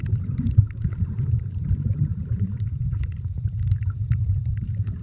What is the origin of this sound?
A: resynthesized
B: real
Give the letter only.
A